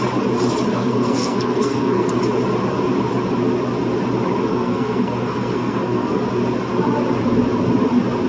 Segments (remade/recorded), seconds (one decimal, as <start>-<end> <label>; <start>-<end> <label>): 0.0-0.7 recorded; 0.7-2.1 remade; 2.1-4.5 recorded; 4.5-6.2 remade; 6.2-8.3 recorded